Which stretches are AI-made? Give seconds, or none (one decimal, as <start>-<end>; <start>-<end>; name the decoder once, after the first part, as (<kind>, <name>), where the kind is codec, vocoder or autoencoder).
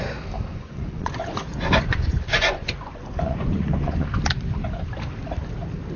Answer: 0.5-4.1 (vocoder, Vocos)